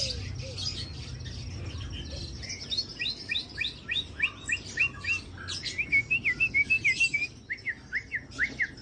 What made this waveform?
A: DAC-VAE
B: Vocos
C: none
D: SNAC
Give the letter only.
C